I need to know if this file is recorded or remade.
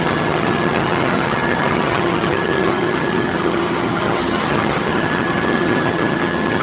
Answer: remade